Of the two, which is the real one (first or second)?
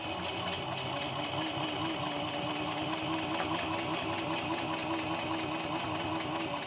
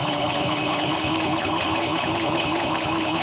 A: first